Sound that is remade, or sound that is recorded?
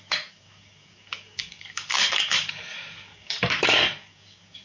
remade